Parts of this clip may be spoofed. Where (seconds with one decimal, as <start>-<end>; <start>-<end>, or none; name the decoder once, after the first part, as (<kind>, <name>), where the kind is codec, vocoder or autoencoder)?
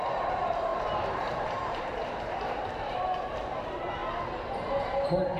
0.0-4.0 (vocoder, BigVGAN v2); 4.8-5.4